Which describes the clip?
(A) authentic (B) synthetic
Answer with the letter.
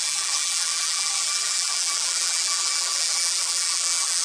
B